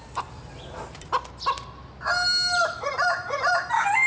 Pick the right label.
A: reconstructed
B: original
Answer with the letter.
B